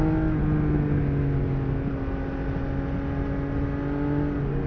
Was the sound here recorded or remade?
recorded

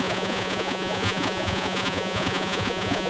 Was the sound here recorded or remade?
remade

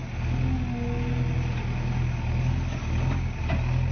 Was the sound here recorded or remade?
recorded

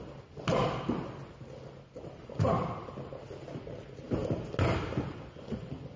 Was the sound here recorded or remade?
recorded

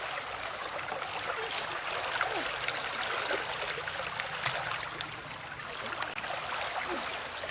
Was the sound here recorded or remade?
recorded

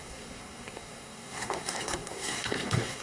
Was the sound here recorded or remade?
remade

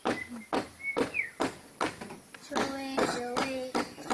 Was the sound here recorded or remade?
recorded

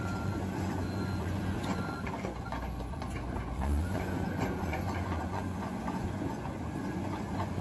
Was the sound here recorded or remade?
remade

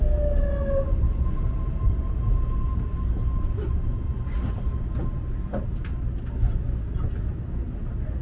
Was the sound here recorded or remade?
recorded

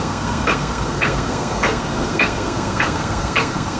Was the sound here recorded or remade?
remade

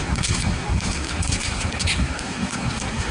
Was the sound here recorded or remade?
remade